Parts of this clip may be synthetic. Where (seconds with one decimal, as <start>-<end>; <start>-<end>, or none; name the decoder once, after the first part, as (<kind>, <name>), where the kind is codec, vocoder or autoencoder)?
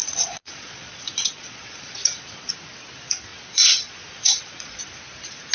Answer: 0.0-2.5 (vocoder, Vocos); 3.3-4.8